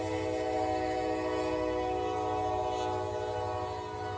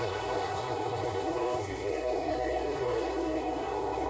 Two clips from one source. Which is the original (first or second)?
first